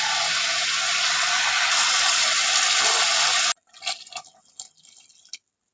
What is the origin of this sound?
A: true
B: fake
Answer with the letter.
A